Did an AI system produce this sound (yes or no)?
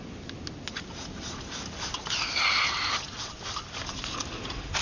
no